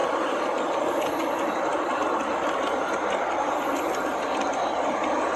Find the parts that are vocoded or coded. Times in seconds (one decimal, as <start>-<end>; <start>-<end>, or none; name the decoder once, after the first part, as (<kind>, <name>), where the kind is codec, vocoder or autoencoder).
none